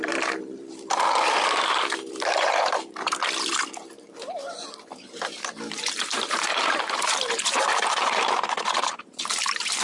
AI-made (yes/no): yes